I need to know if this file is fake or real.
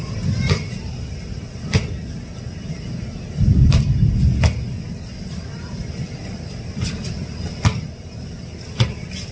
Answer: real